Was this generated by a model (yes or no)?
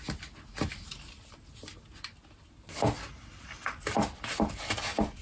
no